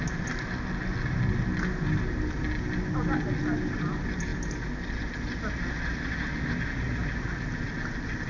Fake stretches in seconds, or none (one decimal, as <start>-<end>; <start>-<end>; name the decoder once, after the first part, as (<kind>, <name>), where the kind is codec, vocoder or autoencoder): none